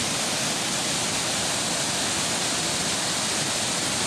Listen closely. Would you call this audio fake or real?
real